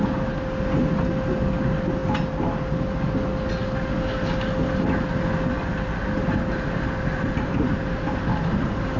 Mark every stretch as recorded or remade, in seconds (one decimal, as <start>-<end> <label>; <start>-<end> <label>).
0.0-9.0 recorded